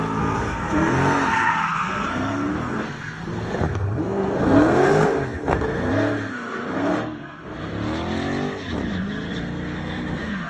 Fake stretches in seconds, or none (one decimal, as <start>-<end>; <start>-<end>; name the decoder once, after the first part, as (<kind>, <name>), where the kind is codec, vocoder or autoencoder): 0.0-7.7 (codec, SNAC); 9.3-10.5